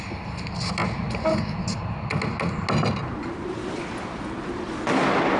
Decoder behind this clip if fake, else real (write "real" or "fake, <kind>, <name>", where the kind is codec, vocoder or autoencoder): real